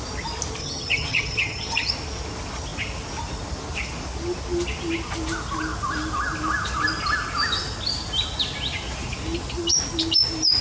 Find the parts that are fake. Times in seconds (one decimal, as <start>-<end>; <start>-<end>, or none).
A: 0.6-1.9